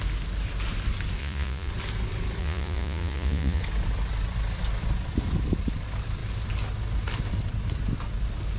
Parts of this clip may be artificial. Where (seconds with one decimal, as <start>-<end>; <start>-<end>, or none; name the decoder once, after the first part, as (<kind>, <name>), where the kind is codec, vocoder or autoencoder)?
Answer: 1.2-1.7 (vocoder, Vocos); 2.4-3.6